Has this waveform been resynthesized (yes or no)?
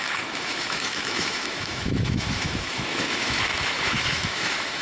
yes